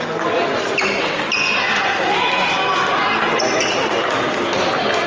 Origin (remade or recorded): recorded